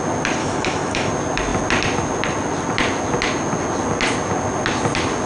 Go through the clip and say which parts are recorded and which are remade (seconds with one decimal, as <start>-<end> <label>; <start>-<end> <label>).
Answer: 0.0-0.4 recorded; 0.4-1.1 remade; 1.1-5.3 recorded